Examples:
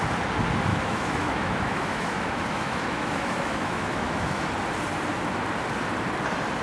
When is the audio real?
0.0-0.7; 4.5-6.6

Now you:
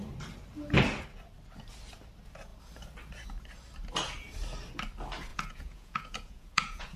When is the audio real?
0.0-5.3